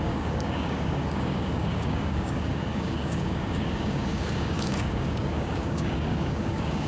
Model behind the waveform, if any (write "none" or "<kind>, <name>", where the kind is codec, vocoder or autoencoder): codec, DAC